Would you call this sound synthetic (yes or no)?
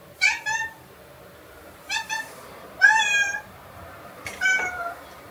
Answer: yes